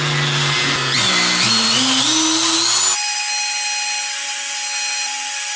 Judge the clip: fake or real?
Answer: real